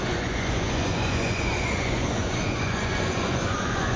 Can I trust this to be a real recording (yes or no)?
no